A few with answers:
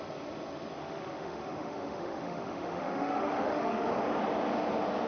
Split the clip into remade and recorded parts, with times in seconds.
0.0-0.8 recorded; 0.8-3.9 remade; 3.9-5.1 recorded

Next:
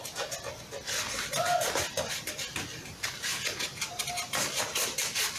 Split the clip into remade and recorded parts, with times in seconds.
0.0-5.4 recorded

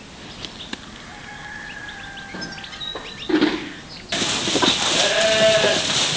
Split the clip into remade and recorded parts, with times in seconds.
0.0-6.2 recorded

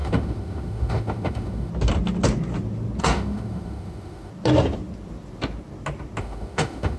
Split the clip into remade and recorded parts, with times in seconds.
0.0-1.7 remade; 1.7-3.0 recorded; 3.0-4.3 remade; 4.3-6.2 recorded; 6.2-7.0 remade

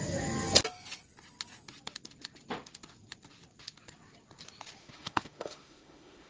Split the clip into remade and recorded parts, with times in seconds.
0.0-4.8 recorded; 4.8-6.3 remade

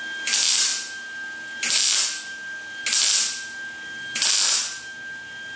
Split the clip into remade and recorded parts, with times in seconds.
0.0-5.6 recorded

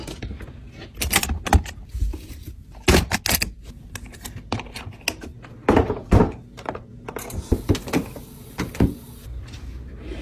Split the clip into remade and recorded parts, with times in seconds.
0.0-10.2 recorded

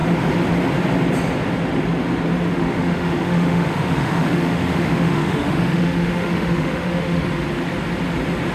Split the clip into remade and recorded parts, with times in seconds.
0.0-2.5 recorded; 2.5-7.3 remade; 7.3-8.5 recorded